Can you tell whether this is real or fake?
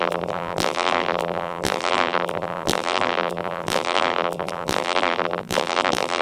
fake